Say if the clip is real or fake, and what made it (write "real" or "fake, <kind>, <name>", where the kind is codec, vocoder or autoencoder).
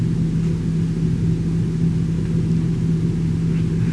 real